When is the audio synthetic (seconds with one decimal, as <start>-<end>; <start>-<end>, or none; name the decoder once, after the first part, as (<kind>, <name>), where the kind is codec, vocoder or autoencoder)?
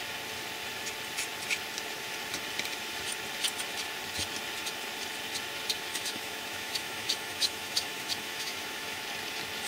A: 5.9-9.0 (autoencoder, DAC-VAE)